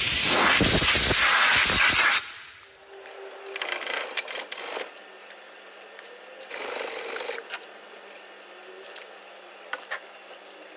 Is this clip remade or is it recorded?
recorded